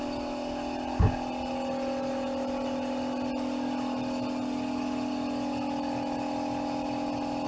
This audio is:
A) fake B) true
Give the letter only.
B